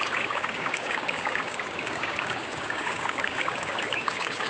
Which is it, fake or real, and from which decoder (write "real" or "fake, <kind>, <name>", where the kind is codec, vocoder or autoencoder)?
fake, codec, DAC